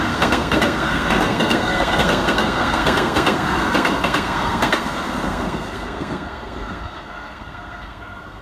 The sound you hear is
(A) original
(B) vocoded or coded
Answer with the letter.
B